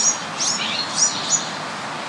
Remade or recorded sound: recorded